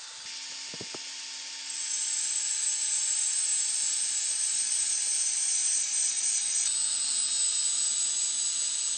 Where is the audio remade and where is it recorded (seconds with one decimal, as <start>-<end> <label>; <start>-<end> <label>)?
0.0-9.0 recorded